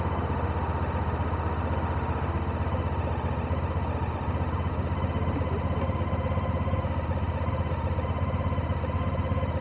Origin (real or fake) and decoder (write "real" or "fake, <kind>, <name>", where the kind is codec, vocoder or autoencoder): real